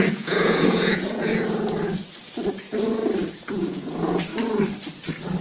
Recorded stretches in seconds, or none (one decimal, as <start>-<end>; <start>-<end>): 1.3-2.5; 3.0-3.5; 4.3-5.4